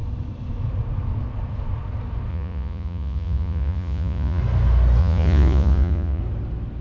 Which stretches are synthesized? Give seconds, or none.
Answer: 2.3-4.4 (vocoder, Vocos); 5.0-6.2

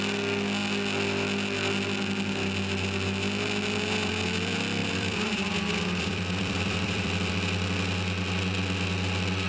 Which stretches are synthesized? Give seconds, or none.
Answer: 4.8-7.3 (vocoder, BigVGAN v2)

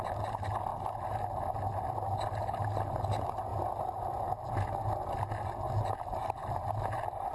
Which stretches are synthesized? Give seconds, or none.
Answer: none